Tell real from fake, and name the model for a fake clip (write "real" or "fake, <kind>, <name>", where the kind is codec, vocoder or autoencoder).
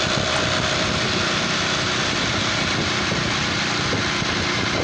real